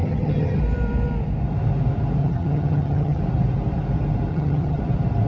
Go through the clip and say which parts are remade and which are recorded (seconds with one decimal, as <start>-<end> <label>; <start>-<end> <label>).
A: 0.0-0.6 remade; 0.6-2.2 recorded; 2.2-3.2 remade; 3.2-4.3 recorded; 4.3-4.8 remade; 4.8-5.3 recorded